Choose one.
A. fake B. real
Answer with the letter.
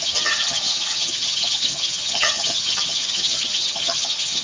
A